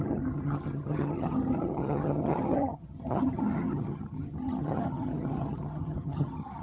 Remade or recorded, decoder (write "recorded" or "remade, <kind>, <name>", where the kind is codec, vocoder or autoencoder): remade, vocoder, HiFi-GAN